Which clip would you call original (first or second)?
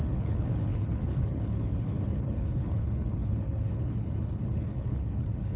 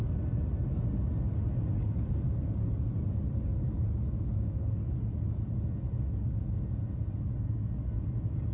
second